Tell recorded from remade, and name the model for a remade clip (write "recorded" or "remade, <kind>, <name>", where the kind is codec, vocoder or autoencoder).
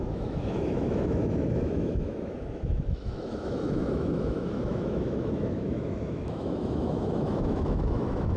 remade, autoencoder, DAC-VAE